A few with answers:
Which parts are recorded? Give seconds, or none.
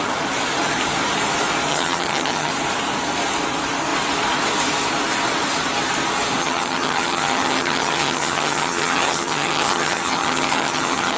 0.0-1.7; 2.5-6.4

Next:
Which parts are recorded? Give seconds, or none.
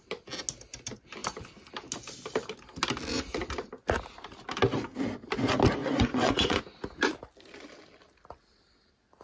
0.0-5.8; 6.6-9.2